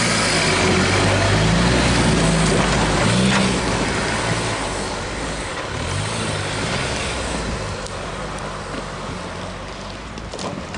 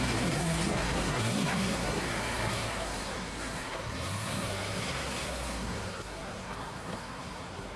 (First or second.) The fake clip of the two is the second